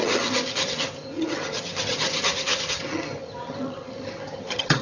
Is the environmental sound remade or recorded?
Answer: remade